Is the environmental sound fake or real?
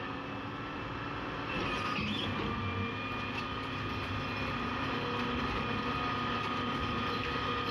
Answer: real